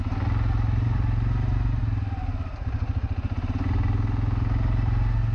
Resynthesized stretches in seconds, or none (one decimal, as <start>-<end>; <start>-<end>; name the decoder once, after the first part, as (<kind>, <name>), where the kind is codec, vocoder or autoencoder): none